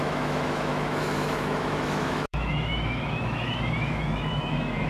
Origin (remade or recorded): remade